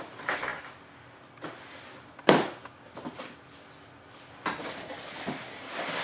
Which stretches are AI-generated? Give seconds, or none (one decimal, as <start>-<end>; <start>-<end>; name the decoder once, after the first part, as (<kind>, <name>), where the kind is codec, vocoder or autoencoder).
none